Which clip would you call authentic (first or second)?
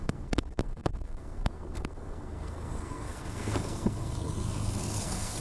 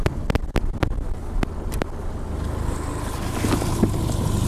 second